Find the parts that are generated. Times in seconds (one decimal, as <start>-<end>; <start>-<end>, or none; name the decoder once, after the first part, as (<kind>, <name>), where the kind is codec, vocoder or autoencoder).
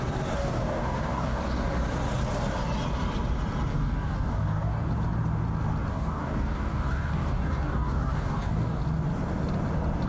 0.4-1.4 (codec, DAC); 3.7-4.9; 5.9-8.8